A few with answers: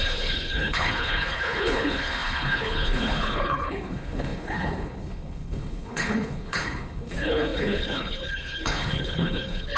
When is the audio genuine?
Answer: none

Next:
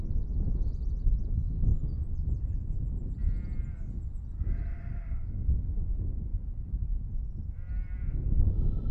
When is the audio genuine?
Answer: 0.0-8.9